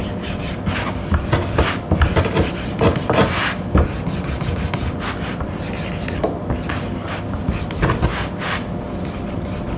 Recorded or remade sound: recorded